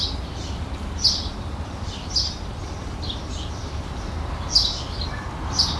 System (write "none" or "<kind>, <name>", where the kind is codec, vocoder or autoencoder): none